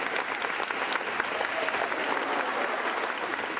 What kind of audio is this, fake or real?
real